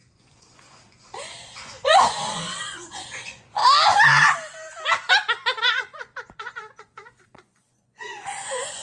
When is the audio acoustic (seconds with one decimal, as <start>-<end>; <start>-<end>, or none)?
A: 3.6-5.6